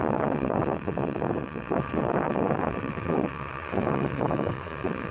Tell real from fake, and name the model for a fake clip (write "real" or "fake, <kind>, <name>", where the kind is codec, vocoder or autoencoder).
fake, vocoder, WaveNeXt